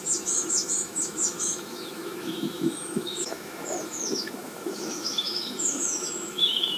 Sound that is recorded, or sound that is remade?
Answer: remade